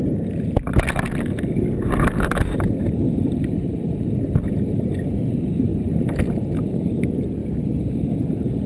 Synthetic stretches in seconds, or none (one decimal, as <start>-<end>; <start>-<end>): none